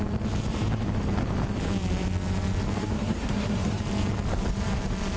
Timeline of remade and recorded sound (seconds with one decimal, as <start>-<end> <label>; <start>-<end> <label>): 0.0-2.8 recorded; 2.8-3.8 remade; 3.8-5.2 recorded